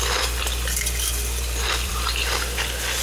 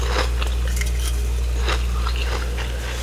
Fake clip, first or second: first